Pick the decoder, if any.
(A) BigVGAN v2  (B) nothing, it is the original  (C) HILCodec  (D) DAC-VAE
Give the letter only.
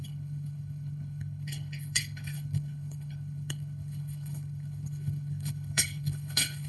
C